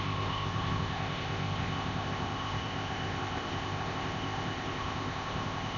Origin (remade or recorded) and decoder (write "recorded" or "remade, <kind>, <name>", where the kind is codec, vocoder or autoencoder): remade, codec, ZipCodec